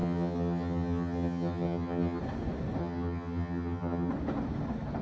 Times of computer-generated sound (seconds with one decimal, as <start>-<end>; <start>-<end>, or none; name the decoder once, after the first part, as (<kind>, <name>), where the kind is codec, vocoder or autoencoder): 0.0-2.2 (vocoder, HiFi-GAN); 2.8-4.1